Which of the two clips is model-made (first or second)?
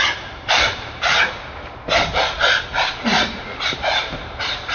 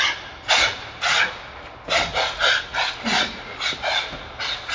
first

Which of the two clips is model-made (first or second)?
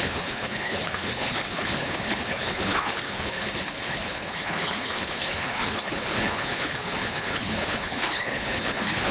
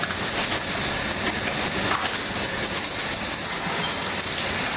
first